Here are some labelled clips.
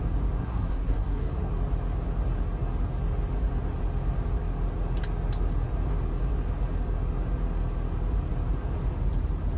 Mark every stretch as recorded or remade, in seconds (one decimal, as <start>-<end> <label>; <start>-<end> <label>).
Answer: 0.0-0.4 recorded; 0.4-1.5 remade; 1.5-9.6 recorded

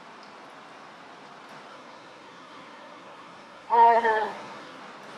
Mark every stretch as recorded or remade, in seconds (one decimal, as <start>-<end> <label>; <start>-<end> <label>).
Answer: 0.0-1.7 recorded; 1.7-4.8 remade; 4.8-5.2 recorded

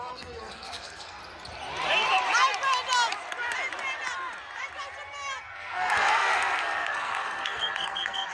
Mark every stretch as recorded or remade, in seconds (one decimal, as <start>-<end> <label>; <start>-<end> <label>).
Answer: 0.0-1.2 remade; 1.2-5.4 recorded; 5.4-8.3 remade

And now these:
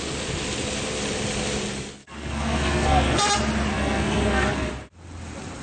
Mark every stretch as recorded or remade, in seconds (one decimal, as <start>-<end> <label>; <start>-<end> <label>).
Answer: 0.0-2.0 recorded; 2.0-3.3 remade; 3.3-3.7 recorded; 3.7-4.7 remade; 4.7-5.6 recorded